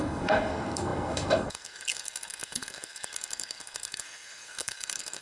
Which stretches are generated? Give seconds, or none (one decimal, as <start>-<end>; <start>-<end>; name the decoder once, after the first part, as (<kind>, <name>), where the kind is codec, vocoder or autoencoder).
0.0-5.2 (codec, SNAC)